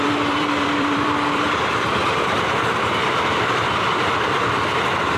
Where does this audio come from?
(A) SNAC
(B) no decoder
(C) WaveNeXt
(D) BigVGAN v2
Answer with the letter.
D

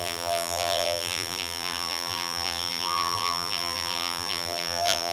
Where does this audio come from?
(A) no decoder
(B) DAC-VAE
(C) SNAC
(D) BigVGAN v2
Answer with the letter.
D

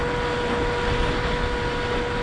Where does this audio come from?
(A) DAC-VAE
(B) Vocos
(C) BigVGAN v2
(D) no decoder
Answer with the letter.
D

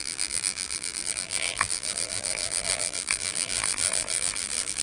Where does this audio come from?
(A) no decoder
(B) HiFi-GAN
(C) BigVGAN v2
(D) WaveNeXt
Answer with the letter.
C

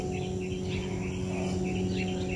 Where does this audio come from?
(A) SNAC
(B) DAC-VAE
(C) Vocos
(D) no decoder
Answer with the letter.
D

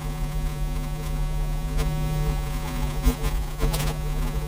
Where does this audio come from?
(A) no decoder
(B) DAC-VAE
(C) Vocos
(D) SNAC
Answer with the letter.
C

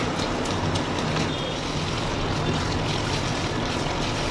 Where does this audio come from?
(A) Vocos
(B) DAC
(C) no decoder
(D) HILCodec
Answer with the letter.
C